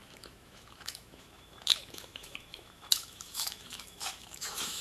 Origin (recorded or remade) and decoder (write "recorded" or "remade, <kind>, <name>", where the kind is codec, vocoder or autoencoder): remade, autoencoder, DAC-VAE